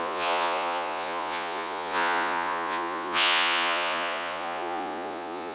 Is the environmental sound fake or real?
fake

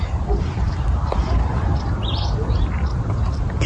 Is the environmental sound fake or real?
real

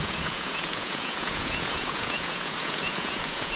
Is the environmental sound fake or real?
fake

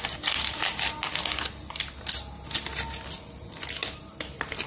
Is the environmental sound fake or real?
real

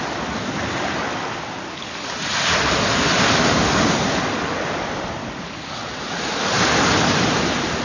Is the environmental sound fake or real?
real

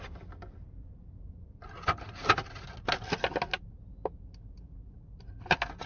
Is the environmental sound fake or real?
real